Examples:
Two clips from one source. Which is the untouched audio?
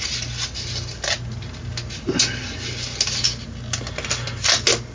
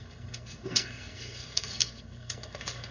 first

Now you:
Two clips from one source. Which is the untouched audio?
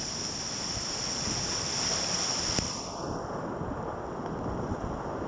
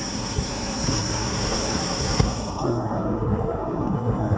first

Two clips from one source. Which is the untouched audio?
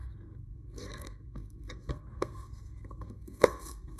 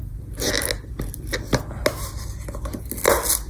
second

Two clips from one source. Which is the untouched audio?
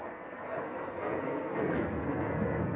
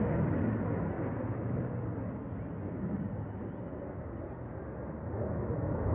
second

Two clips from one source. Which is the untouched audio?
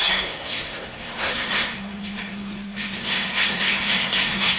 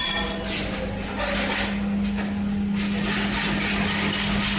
second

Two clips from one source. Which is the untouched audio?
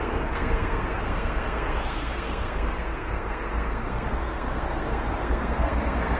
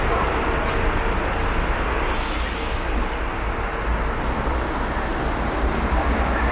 second